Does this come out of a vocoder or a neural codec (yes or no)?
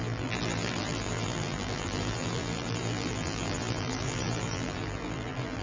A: yes